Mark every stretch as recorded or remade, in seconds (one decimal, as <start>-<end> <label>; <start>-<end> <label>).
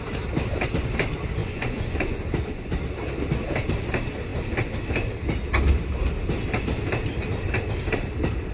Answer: 0.0-1.4 recorded; 1.4-2.8 remade; 2.8-8.5 recorded